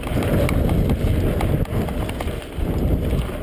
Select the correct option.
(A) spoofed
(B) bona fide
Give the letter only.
B